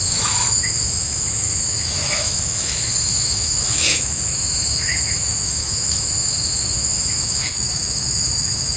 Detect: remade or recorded remade